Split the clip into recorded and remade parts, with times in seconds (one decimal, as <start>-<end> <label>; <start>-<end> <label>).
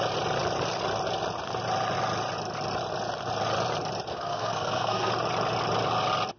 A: 0.0-4.1 recorded; 4.1-5.1 remade; 5.1-6.4 recorded